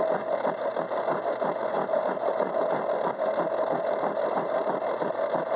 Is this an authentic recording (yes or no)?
yes